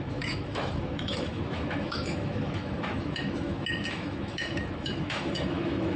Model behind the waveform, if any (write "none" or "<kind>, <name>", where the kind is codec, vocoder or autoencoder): autoencoder, DAC-VAE